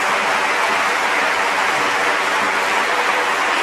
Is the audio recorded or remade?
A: remade